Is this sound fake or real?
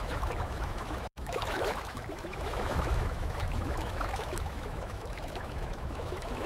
fake